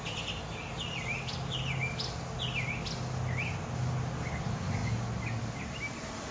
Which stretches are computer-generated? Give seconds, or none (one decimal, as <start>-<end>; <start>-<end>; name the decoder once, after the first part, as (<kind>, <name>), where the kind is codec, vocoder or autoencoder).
none